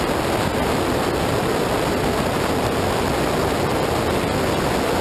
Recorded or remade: recorded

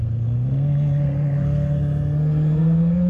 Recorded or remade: remade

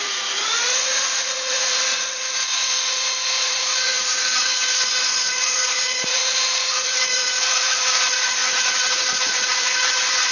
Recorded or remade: remade